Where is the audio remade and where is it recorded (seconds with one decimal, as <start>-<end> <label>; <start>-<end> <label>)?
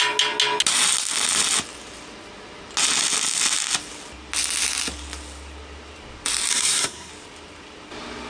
0.0-6.5 recorded; 6.5-7.1 remade; 7.1-8.3 recorded